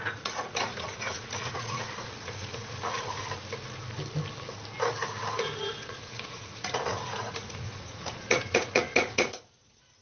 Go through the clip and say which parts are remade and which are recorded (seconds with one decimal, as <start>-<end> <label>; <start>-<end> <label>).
0.0-3.2 remade; 3.2-5.7 recorded; 5.7-10.0 remade

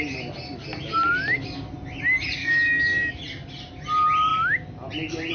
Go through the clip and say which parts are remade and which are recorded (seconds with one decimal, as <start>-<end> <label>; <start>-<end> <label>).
0.0-2.4 recorded; 2.4-3.1 remade; 3.1-5.3 recorded

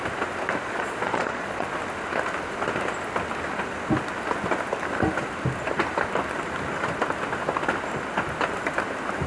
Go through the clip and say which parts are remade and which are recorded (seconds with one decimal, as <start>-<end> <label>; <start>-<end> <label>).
0.0-0.6 recorded; 0.6-1.7 remade; 1.7-9.3 recorded

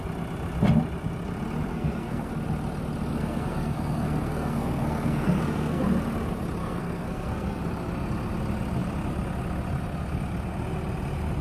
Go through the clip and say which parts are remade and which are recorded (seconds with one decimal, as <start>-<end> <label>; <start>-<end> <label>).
0.0-1.7 recorded; 1.7-2.3 remade; 2.3-3.1 recorded; 3.1-5.8 remade; 5.8-6.6 recorded; 6.6-7.6 remade; 7.6-11.4 recorded

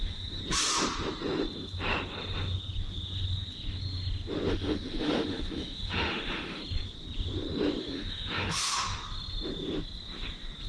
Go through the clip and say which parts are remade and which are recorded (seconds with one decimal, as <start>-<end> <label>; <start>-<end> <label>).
0.0-0.4 remade; 0.4-4.5 recorded; 4.5-6.6 remade; 6.6-7.8 recorded; 7.8-9.0 remade; 9.0-10.7 recorded

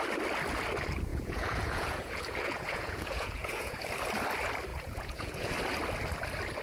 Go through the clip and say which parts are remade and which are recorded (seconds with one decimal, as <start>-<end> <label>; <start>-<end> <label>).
0.0-1.1 recorded; 1.1-3.8 remade; 3.8-4.7 recorded; 4.7-5.5 remade; 5.5-6.6 recorded

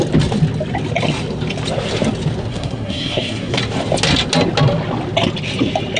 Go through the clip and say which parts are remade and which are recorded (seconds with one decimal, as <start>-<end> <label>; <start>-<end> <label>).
0.0-2.5 recorded; 2.5-3.6 remade; 3.6-6.0 recorded

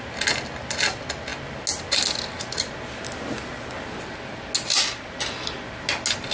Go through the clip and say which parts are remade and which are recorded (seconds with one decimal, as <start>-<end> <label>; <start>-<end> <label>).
0.0-6.3 recorded